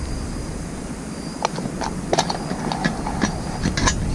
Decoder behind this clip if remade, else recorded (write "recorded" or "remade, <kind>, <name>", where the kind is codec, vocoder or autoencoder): recorded